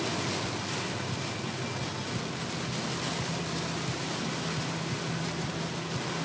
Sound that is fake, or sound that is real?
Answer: real